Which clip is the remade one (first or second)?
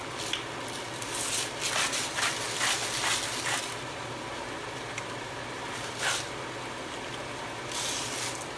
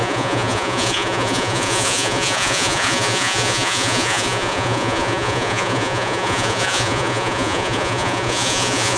second